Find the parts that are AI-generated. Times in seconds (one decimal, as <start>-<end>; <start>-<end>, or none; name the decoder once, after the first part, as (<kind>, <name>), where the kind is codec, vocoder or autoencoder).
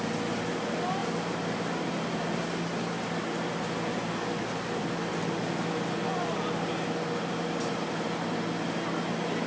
none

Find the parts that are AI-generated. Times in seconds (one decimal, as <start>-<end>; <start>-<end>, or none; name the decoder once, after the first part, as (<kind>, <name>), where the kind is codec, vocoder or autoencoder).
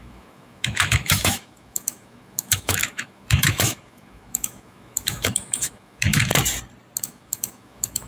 0.0-6.3 (autoencoder, DAC-VAE); 7.0-8.1